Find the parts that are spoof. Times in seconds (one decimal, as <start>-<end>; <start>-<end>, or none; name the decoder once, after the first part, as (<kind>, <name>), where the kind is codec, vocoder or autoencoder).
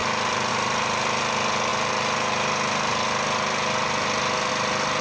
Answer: none